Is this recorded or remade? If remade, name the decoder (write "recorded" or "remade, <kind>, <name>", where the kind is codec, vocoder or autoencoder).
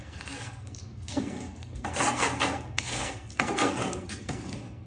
remade, codec, SNAC